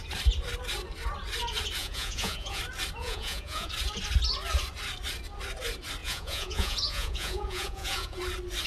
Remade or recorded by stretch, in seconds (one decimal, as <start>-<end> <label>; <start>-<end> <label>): 0.0-1.8 recorded; 1.8-2.6 remade; 2.6-3.0 recorded; 3.0-3.7 remade; 3.7-6.0 recorded; 6.0-8.2 remade; 8.2-8.7 recorded